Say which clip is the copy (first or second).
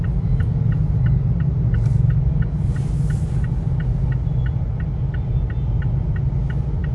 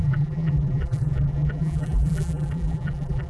second